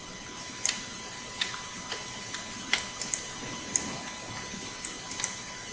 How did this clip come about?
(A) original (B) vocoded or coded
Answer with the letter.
A